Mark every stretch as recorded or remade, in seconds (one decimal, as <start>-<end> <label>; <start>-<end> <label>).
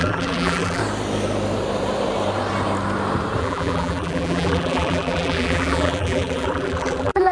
0.0-0.8 remade; 0.8-3.4 recorded; 3.4-7.3 remade